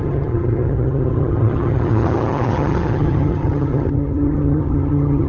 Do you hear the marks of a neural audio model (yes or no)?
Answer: yes